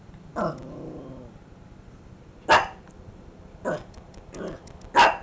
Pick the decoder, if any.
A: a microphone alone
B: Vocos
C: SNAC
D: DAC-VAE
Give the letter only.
A